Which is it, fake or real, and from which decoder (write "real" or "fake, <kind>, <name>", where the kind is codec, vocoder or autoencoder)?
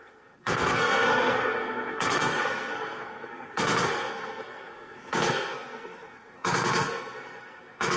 fake, codec, SNAC